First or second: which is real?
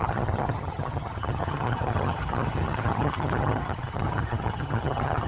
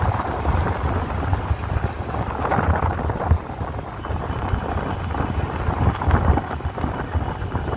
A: second